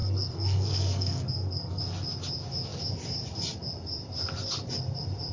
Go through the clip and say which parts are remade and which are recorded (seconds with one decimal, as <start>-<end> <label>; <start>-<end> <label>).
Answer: 0.0-1.8 remade; 1.8-5.3 recorded